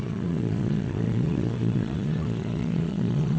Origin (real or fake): fake